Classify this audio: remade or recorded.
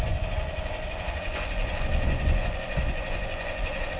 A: remade